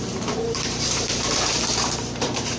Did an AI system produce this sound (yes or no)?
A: yes